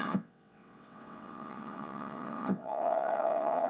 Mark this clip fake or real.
fake